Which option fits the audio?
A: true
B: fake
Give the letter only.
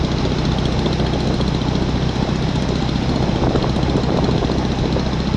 A